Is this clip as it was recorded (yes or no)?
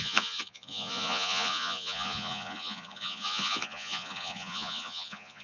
no